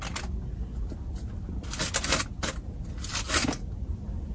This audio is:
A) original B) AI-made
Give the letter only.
A